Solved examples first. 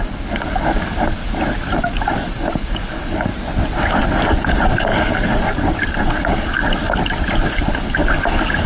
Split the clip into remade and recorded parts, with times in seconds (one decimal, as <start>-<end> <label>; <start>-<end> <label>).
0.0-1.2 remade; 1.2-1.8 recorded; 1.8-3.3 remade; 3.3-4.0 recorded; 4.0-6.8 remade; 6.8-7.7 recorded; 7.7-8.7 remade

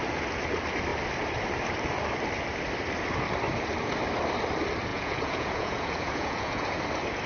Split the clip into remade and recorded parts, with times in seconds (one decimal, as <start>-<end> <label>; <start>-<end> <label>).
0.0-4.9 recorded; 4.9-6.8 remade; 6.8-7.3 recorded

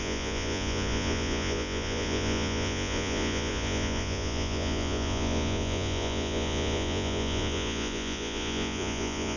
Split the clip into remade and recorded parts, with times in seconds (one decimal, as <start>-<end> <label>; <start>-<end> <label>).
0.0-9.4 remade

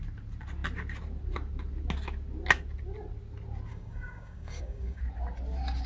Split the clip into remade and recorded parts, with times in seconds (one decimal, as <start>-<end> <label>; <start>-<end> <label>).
0.0-3.7 recorded; 3.7-5.0 remade; 5.0-5.9 recorded